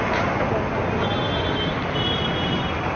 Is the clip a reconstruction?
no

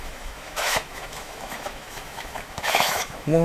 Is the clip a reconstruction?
yes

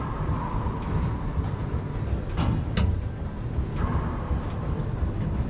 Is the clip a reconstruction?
no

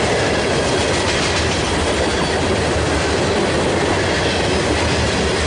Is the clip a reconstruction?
no